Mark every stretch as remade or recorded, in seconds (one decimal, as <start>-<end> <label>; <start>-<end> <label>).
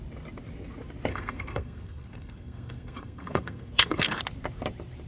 0.0-1.1 recorded; 1.1-4.2 remade; 4.2-5.1 recorded